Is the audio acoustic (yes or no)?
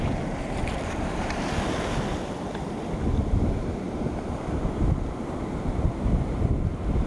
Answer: yes